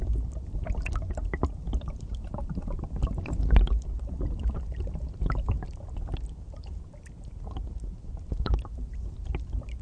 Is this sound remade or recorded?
recorded